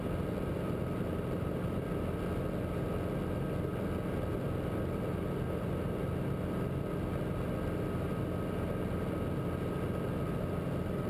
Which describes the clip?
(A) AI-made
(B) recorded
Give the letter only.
B